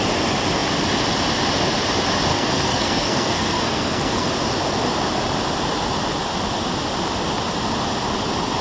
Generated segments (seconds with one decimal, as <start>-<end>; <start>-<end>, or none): 2.3-4.3